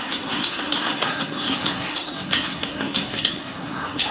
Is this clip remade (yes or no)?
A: yes